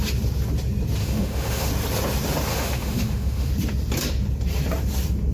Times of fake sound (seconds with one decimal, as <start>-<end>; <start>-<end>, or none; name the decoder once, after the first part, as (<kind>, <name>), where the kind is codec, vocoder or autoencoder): 1.0-1.7 (autoencoder, DAC-VAE); 2.5-3.5